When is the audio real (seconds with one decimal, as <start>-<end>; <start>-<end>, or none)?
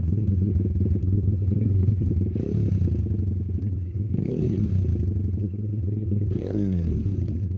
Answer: 0.5-1.0; 2.1-3.6; 4.7-5.4